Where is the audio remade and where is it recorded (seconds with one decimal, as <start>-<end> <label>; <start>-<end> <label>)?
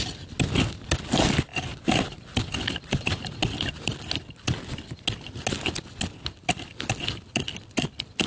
0.0-8.3 recorded